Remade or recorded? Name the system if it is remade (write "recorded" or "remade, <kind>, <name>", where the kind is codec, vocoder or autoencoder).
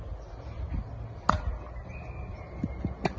recorded